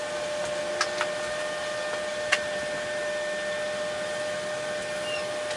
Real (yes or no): yes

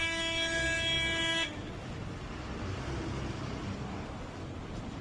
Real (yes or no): yes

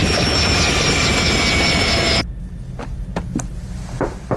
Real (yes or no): yes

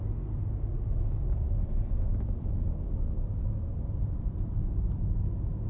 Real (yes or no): yes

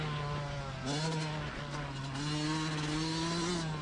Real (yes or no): yes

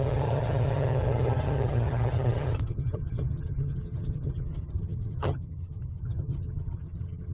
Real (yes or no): no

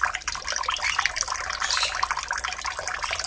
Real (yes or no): yes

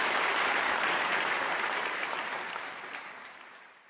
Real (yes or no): no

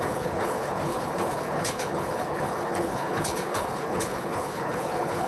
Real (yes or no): no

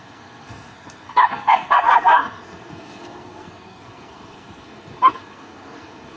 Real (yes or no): no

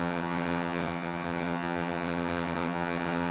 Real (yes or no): no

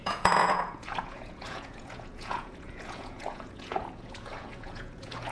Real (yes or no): no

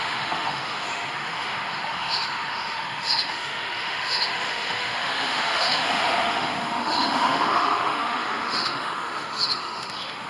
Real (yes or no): no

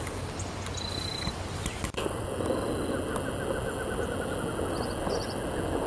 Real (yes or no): yes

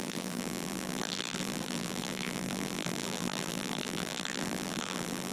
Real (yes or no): no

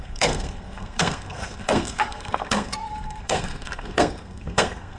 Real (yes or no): no